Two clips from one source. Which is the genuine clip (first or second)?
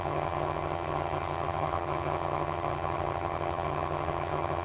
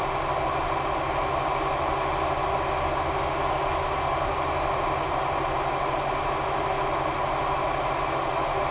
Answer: second